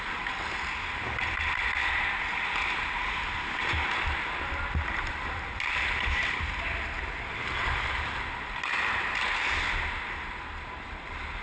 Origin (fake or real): real